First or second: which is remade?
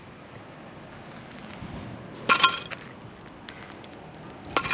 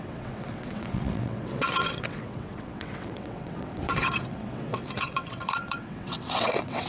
second